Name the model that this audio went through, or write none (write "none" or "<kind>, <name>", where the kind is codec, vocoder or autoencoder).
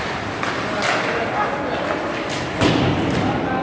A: none